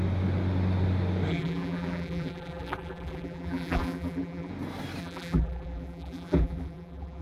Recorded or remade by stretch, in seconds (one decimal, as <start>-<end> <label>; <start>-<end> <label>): 0.0-1.3 recorded; 1.3-4.5 remade; 4.5-5.0 recorded; 5.0-7.2 remade